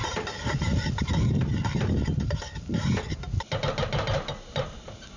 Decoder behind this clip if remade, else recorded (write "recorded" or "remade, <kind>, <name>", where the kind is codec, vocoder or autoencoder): recorded